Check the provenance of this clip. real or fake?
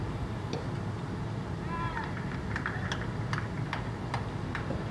real